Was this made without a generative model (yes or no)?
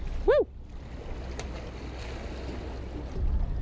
yes